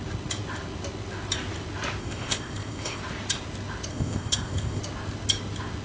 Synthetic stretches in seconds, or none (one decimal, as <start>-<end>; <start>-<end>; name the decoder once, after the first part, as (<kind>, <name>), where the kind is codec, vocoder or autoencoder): 2.0-3.0 (codec, ZipCodec); 3.9-4.8